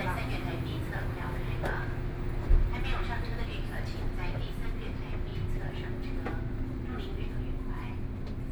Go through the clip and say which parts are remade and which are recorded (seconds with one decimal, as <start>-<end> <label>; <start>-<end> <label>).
0.0-8.5 recorded